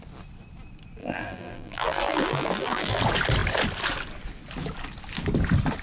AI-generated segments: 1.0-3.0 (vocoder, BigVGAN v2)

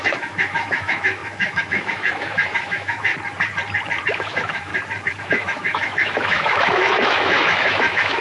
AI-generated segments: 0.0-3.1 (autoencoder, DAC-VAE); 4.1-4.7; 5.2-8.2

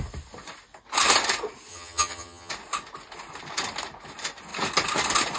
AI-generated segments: 1.7-2.5 (vocoder, HiFi-GAN)